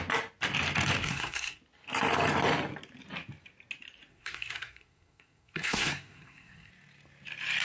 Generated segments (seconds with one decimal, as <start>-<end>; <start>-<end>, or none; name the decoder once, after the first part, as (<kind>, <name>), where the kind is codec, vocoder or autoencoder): 1.0-1.6 (codec, SNAC); 4.1-6.7